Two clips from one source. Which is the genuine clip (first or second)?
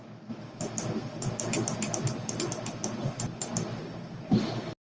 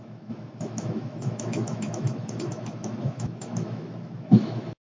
first